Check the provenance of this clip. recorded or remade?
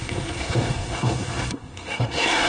remade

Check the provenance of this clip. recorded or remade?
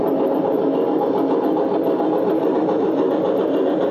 recorded